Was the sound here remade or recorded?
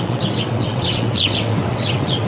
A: remade